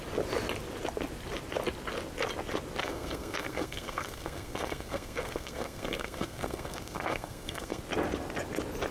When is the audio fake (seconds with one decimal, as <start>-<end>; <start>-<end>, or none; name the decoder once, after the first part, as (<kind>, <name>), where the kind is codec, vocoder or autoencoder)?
2.8-7.8 (codec, SNAC)